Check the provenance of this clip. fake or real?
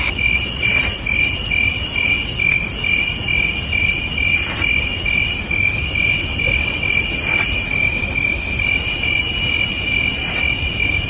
real